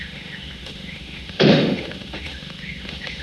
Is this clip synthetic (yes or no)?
yes